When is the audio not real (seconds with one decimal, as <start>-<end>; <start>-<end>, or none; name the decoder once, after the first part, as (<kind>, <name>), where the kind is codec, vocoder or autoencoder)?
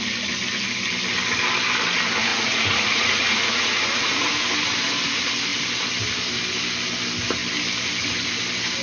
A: 2.3-4.3 (vocoder, Vocos)